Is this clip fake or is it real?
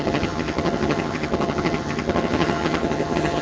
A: fake